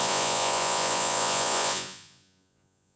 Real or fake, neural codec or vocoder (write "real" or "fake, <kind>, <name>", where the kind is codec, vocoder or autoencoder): fake, vocoder, Vocos